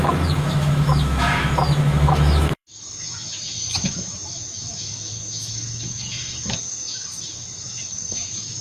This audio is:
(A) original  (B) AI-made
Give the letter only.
B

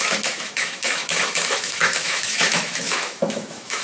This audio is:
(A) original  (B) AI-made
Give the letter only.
B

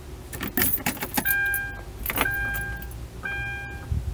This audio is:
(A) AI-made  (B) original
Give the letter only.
B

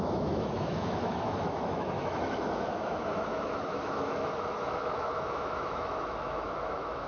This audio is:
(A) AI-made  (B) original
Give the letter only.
A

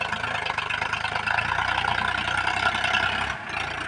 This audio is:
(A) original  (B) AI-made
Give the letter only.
A